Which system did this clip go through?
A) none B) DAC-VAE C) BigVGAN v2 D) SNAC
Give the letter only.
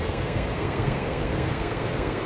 D